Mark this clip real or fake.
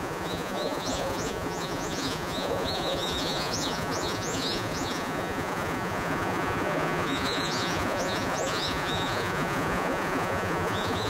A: fake